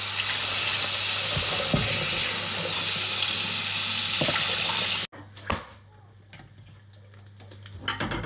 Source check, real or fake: real